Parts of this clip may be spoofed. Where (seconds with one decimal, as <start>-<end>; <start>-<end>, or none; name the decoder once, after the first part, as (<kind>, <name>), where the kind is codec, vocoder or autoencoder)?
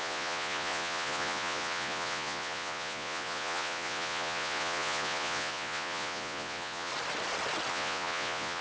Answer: 0.0-6.9 (vocoder, Vocos); 7.7-8.6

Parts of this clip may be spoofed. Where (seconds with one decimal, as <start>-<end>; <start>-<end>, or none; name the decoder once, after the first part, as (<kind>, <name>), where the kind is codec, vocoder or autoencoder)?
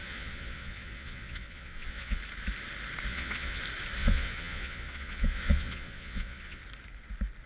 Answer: 0.0-2.2 (vocoder, Vocos); 3.1-3.6; 4.0-6.6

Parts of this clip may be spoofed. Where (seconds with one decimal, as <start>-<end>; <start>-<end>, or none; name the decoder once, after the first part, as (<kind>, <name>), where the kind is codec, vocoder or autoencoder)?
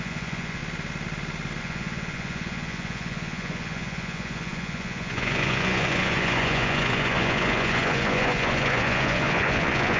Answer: 0.0-0.6 (vocoder, Vocos); 1.6-10.0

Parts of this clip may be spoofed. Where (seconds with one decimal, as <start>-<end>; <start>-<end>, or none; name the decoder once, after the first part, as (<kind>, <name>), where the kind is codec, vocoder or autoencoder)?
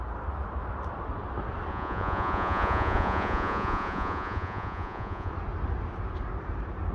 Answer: 1.7-5.3 (vocoder, Vocos)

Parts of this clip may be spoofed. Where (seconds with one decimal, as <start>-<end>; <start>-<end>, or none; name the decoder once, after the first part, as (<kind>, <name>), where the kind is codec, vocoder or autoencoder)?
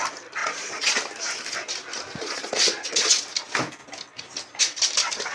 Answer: 0.4-1.0 (vocoder, Vocos); 2.2-3.2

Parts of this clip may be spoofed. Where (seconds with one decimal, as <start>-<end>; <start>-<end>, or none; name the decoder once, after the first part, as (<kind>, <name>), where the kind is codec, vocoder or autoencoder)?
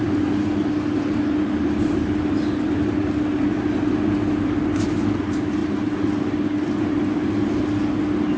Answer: none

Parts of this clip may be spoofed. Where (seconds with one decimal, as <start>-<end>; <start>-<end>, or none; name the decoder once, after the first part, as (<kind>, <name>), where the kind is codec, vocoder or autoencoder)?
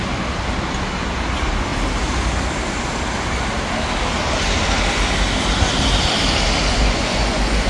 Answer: 6.7-7.7 (vocoder, Vocos)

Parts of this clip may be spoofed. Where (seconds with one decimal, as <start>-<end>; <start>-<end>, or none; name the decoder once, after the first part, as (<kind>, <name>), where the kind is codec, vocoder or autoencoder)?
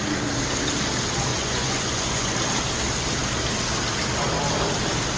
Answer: 1.3-2.3 (vocoder, Vocos)